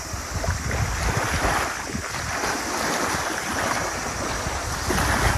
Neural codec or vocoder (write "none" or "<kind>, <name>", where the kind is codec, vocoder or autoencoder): none